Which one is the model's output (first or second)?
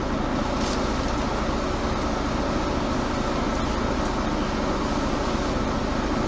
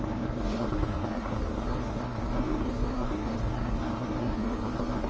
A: second